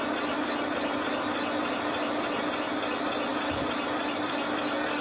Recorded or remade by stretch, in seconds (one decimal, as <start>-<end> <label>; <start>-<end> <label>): 0.0-5.0 recorded